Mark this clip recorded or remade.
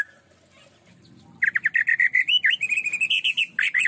recorded